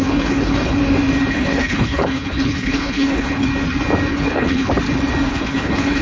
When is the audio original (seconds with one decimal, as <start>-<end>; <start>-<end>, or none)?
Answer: 0.8-1.3; 3.5-4.1; 4.7-5.3

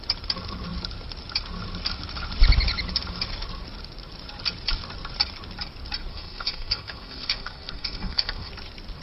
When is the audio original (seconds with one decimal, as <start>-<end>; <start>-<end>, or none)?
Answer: 0.0-6.1; 8.5-9.0

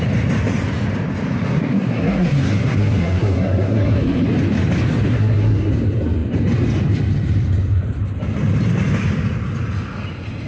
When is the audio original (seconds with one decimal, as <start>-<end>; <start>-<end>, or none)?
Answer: 0.0-1.5; 4.2-5.1; 5.7-10.5

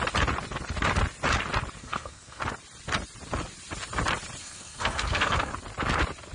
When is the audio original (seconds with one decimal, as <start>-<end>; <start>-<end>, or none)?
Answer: 0.0-1.8; 2.4-4.4; 5.5-6.3